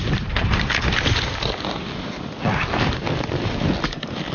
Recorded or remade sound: recorded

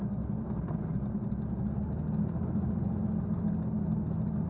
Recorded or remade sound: recorded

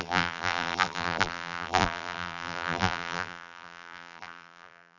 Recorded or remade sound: remade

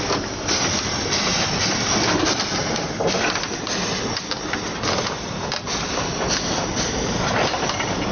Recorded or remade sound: recorded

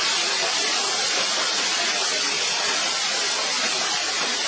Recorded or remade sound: recorded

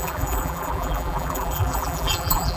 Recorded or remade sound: remade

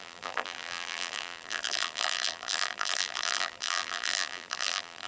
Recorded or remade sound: remade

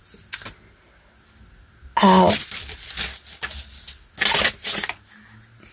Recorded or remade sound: recorded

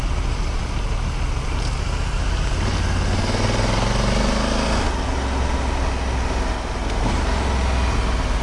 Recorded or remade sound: recorded